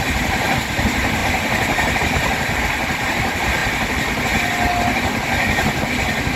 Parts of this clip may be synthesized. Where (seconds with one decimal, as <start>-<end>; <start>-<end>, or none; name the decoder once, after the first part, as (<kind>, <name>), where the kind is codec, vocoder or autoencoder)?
none